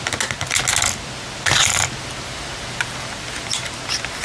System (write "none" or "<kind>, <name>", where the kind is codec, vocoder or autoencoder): none